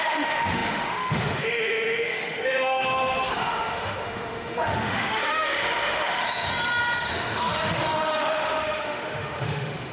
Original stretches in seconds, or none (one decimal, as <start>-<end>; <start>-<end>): 6.5-7.1